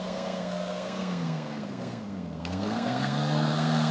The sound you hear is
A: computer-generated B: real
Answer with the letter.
A